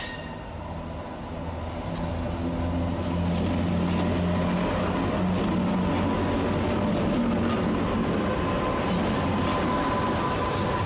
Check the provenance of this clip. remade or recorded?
recorded